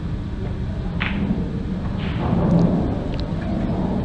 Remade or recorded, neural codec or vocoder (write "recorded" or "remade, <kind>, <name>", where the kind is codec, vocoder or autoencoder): recorded